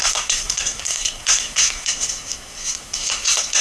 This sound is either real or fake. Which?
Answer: fake